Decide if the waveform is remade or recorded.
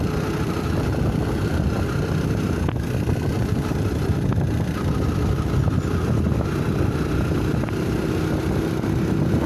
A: recorded